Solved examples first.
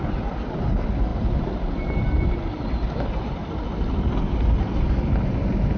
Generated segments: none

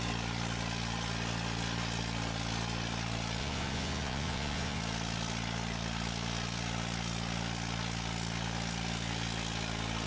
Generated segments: 3.4-4.8 (vocoder, Vocos)

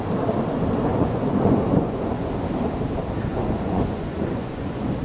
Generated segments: 0.9-2.3 (vocoder, Vocos); 3.3-5.0

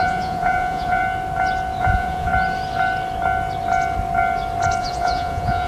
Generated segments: 0.0-1.0 (vocoder, Vocos); 1.8-2.3; 4.8-5.7

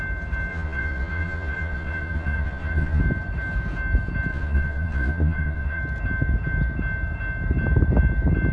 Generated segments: 0.5-3.0 (vocoder, Vocos); 4.3-5.8

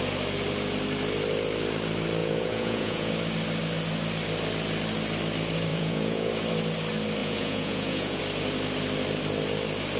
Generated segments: 2.2-3.1 (vocoder, Vocos); 5.7-6.3; 7.2-8.2